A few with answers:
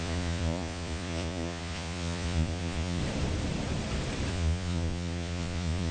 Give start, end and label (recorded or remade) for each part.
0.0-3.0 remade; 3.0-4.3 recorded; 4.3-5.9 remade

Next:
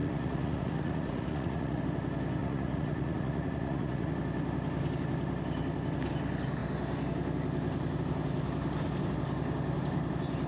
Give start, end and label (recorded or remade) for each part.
0.0-1.8 remade; 1.8-2.4 recorded; 2.4-4.1 remade; 4.1-10.5 recorded

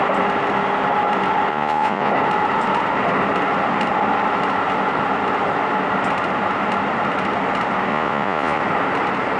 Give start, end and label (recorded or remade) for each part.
0.0-1.5 recorded; 1.5-2.1 remade; 2.1-7.9 recorded; 7.9-8.6 remade; 8.6-9.4 recorded